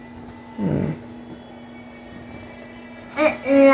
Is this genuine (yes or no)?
yes